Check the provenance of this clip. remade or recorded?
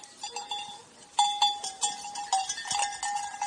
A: recorded